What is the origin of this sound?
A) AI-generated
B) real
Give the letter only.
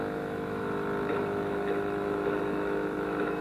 A